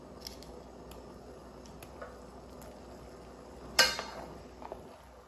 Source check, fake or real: real